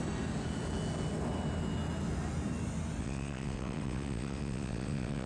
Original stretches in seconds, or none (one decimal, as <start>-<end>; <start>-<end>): 0.0-3.0